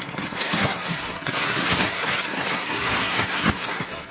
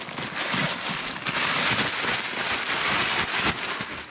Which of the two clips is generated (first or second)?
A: first